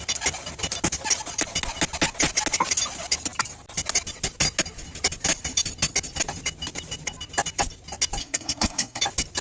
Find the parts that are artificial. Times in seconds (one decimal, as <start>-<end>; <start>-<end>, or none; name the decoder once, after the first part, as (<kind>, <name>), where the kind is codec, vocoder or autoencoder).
8.2-9.0 (codec, SNAC)